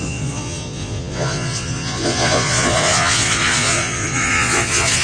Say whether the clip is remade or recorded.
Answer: remade